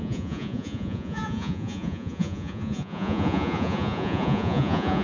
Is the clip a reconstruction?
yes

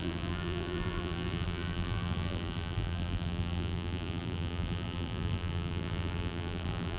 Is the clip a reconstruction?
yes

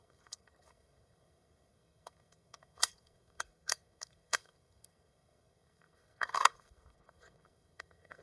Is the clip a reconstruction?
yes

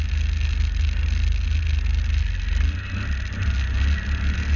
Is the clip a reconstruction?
no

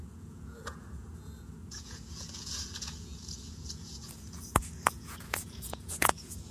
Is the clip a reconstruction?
yes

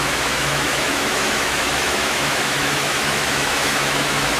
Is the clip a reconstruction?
yes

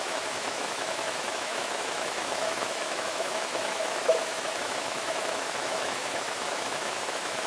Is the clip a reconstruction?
yes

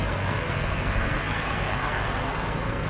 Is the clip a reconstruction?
yes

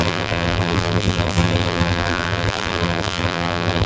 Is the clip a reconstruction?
yes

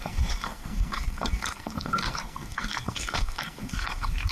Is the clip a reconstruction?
yes